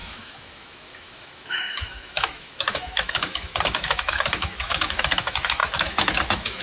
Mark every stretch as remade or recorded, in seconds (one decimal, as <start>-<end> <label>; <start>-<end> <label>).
0.0-6.6 remade